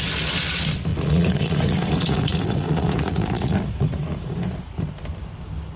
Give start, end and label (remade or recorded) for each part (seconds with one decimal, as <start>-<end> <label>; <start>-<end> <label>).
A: 0.0-0.9 recorded; 0.9-4.4 remade; 4.4-5.8 recorded